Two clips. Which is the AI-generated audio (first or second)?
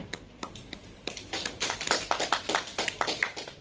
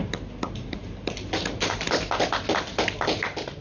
first